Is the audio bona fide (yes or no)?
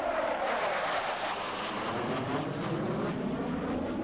yes